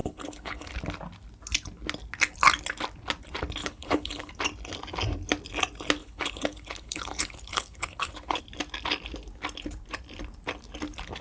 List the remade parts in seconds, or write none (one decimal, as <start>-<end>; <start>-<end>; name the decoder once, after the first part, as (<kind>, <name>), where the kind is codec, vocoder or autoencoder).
0.0-0.7 (codec, HILCodec); 3.6-4.3; 6.0-8.4